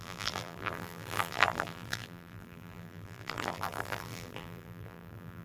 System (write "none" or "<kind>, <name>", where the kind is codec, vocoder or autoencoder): vocoder, BigVGAN v2